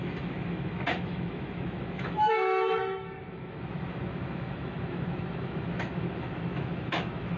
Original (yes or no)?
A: no